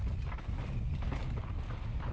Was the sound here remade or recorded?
recorded